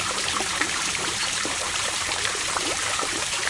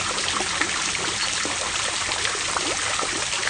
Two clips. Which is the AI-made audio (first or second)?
first